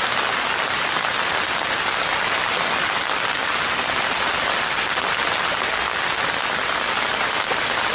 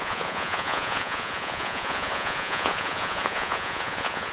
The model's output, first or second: second